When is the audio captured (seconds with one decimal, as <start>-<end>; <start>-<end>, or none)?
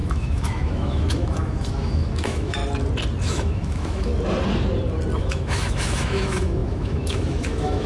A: 2.6-3.2; 4.1-5.2